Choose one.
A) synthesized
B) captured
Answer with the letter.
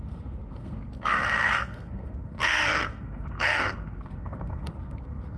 A